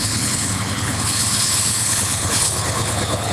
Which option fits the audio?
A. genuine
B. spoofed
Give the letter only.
B